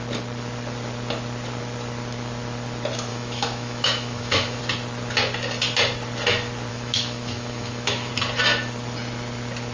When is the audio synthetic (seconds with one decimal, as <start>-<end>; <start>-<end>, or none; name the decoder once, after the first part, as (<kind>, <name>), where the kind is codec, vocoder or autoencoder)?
3.1-4.6 (autoencoder, DAC-VAE); 6.7-8.1